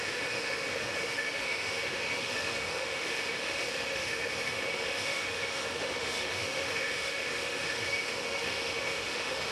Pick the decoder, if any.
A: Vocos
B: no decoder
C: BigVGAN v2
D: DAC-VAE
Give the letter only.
D